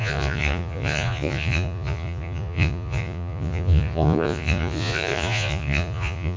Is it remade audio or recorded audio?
remade